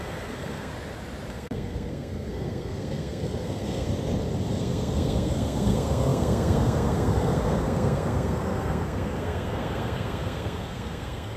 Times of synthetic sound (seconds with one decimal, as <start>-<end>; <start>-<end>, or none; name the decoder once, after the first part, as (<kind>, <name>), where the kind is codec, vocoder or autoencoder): 0.0-0.7 (codec, SNAC); 1.3-3.9; 4.5-11.4